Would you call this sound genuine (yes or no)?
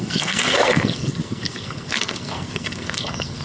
no